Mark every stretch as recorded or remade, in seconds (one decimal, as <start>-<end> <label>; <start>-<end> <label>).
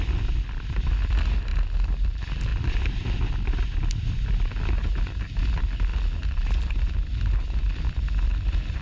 0.0-8.8 recorded